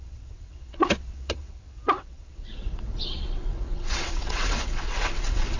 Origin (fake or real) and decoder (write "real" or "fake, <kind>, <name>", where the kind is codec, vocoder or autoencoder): fake, vocoder, WaveNeXt